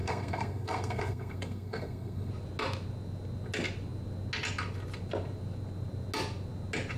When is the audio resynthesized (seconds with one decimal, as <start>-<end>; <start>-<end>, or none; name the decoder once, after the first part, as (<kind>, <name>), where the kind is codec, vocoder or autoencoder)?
0.0-2.3 (codec, SNAC)